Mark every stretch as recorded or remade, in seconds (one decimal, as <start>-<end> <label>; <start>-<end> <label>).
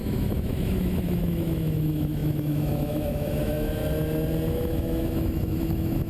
0.0-3.8 remade; 3.8-4.5 recorded; 4.5-6.1 remade